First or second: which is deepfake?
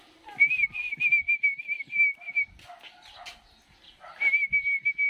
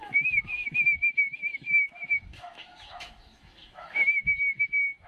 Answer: second